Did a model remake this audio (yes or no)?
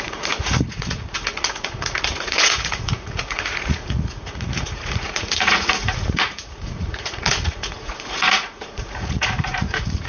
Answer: yes